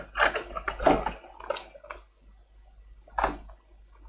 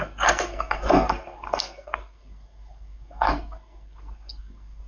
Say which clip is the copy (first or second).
second